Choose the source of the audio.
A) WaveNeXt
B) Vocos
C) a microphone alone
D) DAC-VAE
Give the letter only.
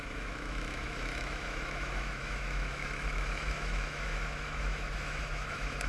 D